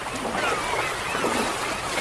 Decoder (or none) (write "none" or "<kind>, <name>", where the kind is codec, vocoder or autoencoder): none